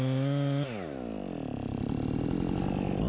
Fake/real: real